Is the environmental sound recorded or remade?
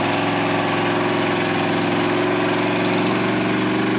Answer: recorded